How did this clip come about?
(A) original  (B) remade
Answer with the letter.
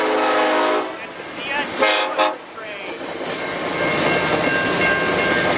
A